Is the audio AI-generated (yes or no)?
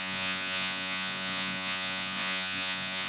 yes